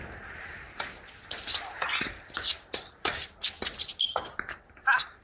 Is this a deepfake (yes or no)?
no